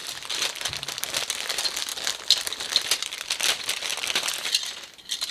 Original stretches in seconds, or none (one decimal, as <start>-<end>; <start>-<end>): 0.0-5.3